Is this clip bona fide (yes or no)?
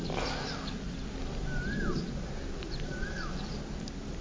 yes